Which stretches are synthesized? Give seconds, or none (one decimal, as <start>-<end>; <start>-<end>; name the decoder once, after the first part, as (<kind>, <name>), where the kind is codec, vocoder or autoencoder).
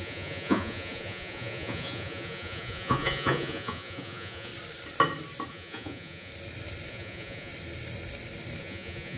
0.0-4.5 (vocoder, Vocos); 5.5-6.3; 6.9-7.5; 8.6-9.2